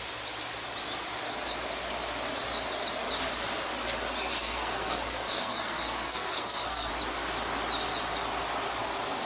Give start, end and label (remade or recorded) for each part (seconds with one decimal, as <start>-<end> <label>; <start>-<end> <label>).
0.0-4.3 recorded; 4.3-6.9 remade; 6.9-9.3 recorded